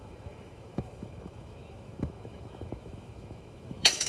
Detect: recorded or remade remade